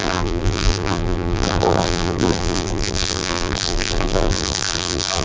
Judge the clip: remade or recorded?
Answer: remade